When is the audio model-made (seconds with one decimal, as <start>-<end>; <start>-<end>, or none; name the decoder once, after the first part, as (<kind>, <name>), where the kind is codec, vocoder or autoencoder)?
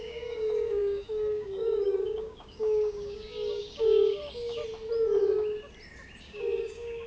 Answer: 0.0-4.6 (codec, DAC); 6.2-7.1